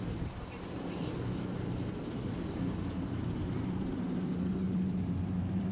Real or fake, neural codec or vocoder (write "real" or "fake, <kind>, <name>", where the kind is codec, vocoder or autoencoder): fake, vocoder, BigVGAN v2